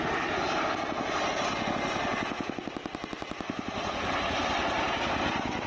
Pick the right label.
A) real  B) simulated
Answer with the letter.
A